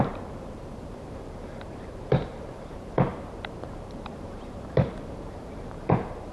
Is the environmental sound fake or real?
fake